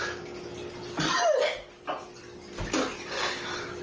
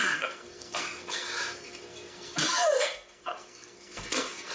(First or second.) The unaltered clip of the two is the first